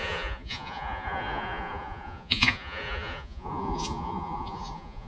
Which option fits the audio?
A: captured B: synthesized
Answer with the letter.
B